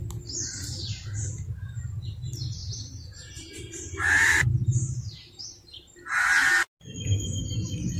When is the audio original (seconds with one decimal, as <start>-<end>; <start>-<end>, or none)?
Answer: 0.0-2.6; 5.4-8.0